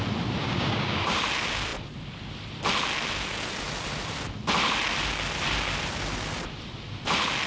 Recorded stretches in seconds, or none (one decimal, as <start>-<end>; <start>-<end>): 0.0-0.4; 1.2-7.5